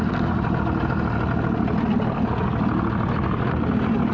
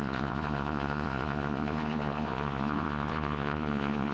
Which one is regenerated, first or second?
second